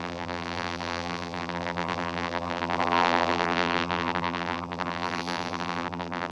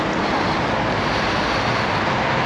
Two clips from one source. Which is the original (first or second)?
second